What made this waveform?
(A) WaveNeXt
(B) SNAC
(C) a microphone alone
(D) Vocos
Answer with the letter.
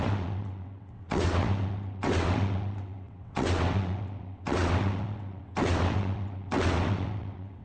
A